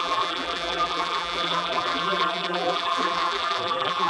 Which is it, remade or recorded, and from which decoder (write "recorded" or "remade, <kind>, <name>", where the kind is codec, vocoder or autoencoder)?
remade, vocoder, BigVGAN v2